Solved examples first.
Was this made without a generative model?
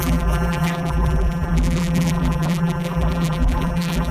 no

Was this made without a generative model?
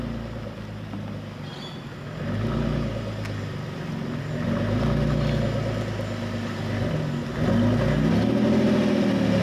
yes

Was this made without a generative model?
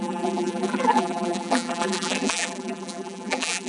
no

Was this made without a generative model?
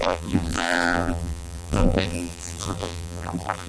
no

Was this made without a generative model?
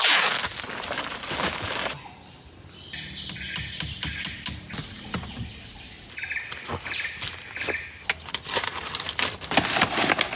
yes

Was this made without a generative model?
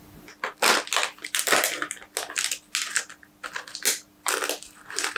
yes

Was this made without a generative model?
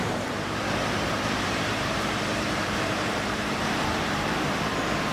no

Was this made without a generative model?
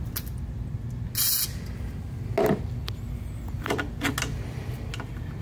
yes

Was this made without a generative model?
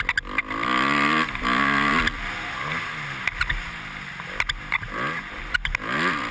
yes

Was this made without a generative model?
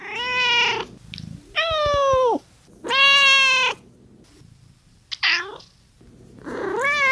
yes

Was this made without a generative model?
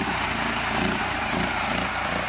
no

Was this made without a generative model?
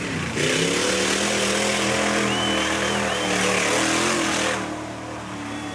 yes